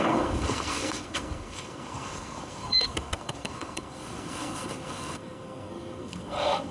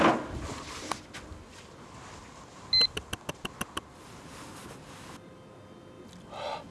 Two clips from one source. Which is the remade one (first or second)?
first